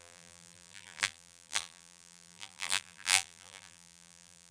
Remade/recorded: remade